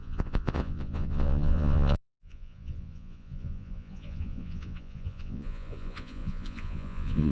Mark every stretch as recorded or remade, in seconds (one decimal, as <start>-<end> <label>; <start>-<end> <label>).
0.0-7.3 remade